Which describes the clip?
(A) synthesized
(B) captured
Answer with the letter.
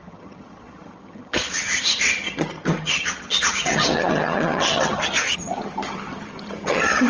A